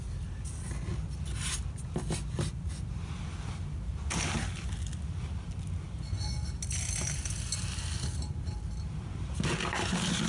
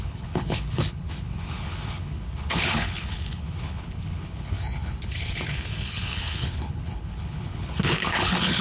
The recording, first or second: first